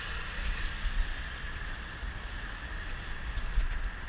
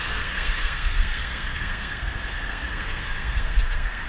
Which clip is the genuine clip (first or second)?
first